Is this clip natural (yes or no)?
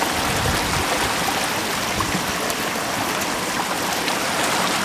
yes